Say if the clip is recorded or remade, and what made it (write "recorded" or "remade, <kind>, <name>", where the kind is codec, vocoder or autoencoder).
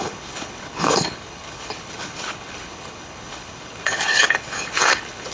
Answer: remade, codec, HILCodec